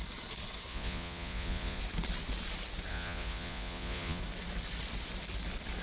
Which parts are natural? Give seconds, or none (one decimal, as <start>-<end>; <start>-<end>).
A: 0.0-0.7; 1.8-2.9; 4.2-5.8